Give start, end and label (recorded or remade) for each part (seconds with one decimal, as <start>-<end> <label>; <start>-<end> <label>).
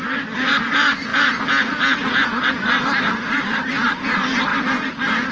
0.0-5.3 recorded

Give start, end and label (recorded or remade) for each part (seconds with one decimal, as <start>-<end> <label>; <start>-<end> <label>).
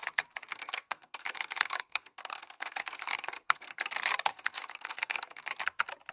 0.0-0.5 recorded; 0.5-3.9 remade; 3.9-4.3 recorded; 4.3-5.4 remade; 5.4-6.1 recorded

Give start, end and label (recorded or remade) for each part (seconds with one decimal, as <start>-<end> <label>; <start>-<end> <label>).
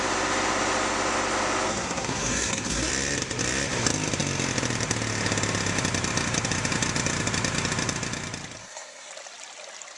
0.0-1.7 recorded; 1.7-2.9 remade; 2.9-8.6 recorded; 8.6-9.1 remade; 9.1-10.0 recorded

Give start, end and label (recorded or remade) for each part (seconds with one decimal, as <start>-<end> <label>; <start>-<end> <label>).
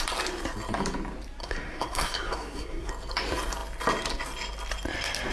0.0-1.4 recorded; 1.4-2.9 remade; 2.9-5.3 recorded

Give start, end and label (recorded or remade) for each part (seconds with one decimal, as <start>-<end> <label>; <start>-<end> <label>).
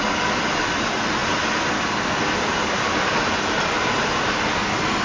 0.0-5.0 recorded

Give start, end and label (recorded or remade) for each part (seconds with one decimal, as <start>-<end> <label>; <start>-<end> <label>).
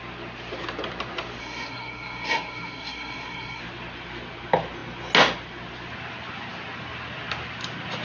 0.0-1.4 recorded; 1.4-3.6 remade; 3.6-8.0 recorded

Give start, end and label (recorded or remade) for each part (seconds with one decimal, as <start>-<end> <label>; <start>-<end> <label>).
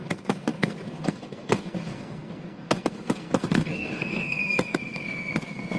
0.0-5.8 remade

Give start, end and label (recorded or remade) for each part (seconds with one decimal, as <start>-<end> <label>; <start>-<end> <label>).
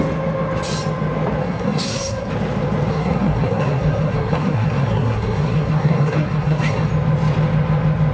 0.0-1.4 recorded; 1.4-2.3 remade; 2.3-2.9 recorded; 2.9-6.9 remade; 6.9-8.1 recorded